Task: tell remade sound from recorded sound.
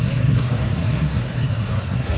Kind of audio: remade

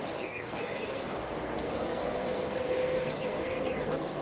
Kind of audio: remade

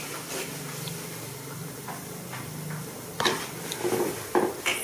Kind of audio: recorded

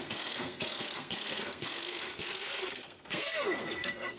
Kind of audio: remade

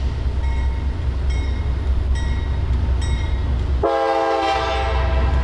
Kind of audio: recorded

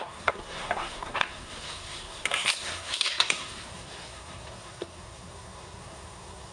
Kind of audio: remade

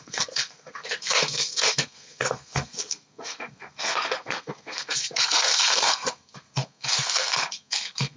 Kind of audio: remade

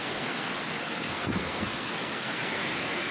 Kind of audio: remade